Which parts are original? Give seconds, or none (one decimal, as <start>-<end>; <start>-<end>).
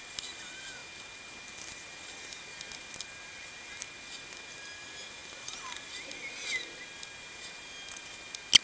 0.0-8.6